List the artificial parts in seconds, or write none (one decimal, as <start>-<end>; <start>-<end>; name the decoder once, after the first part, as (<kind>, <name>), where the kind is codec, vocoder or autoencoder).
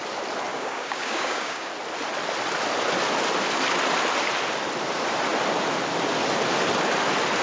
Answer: 0.5-1.7 (codec, DAC)